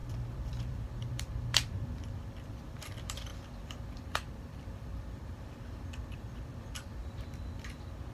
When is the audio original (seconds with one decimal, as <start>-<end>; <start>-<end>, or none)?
7.0-8.1